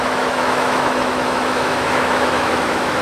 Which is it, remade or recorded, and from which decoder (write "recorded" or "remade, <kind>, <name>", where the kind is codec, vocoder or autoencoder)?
remade, autoencoder, DAC-VAE